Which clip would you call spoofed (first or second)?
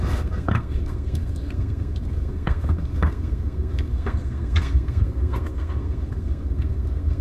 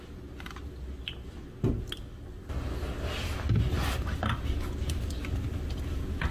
first